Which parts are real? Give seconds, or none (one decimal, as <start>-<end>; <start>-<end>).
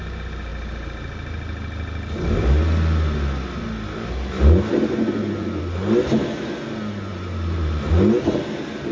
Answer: 0.0-7.1; 7.9-8.9